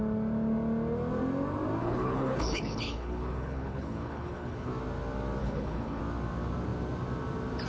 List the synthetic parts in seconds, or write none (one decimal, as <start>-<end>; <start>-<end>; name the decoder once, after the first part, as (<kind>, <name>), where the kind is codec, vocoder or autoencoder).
1.8-4.7 (codec, HILCodec); 5.4-6.0

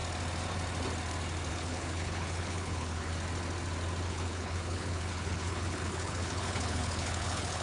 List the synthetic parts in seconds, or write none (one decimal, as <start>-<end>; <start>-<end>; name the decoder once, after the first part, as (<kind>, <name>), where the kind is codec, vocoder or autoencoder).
1.5-3.1 (codec, HILCodec); 4.0-7.6

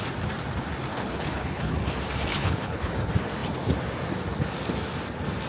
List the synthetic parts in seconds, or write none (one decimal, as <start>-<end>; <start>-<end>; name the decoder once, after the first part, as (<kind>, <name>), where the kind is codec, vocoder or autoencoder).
0.9-1.7 (codec, HILCodec); 2.3-2.9

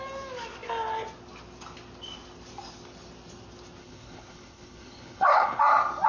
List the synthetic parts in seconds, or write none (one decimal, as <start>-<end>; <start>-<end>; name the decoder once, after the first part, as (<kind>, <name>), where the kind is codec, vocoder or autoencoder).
3.8-5.6 (codec, HILCodec)

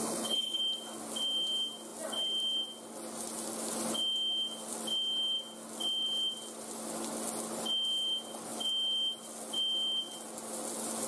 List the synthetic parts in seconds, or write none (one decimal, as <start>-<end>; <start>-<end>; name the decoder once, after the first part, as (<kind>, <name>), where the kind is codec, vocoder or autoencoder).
0.0-0.6 (codec, HILCodec)

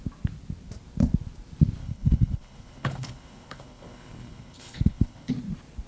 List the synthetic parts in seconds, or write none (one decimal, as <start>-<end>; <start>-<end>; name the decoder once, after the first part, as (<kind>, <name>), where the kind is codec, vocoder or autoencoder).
1.8-5.3 (codec, HILCodec)

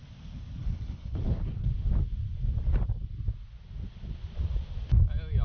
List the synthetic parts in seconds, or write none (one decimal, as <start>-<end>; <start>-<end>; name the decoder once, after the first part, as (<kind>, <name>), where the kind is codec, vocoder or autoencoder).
0.6-1.7 (codec, HILCodec)

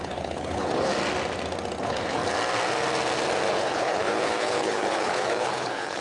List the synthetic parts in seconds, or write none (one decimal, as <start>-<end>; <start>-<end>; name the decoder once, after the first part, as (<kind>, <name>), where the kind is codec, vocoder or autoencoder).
0.0-0.9 (codec, HILCodec); 1.8-2.2; 3.5-6.0